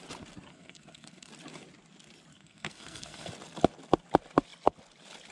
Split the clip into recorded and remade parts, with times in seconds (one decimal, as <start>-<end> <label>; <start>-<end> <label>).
0.0-0.5 recorded; 0.5-1.3 remade; 1.3-2.3 recorded; 2.3-3.3 remade; 3.3-5.3 recorded